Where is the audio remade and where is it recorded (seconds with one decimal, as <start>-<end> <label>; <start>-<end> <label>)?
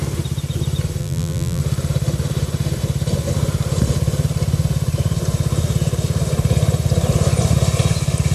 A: 0.0-1.0 recorded; 1.0-1.6 remade; 1.6-8.3 recorded